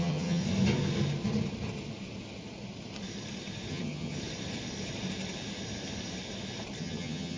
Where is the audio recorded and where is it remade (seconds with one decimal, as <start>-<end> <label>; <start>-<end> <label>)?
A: 0.0-0.4 remade; 0.4-3.7 recorded; 3.7-4.2 remade; 4.2-6.8 recorded; 6.8-7.4 remade